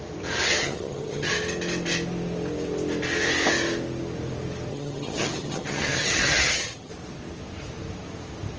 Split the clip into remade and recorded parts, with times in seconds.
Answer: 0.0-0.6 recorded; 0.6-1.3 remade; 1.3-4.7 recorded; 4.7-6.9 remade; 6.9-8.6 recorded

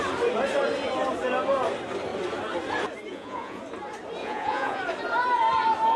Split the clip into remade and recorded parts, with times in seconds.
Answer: 0.0-3.1 recorded; 3.1-3.6 remade; 3.6-4.2 recorded; 4.2-4.8 remade; 4.8-6.0 recorded

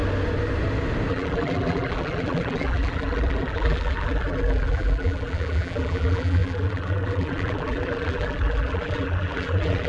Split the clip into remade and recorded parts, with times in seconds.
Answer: 0.0-1.1 recorded; 1.1-9.9 remade

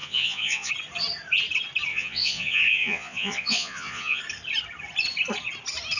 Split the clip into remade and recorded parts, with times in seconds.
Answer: 0.0-0.7 remade; 0.7-1.9 recorded; 1.9-4.2 remade; 4.2-6.0 recorded

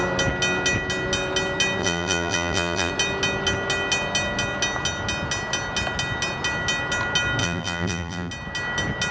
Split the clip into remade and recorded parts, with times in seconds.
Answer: 0.0-1.8 recorded; 1.8-2.9 remade; 2.9-7.4 recorded; 7.4-8.3 remade; 8.3-9.1 recorded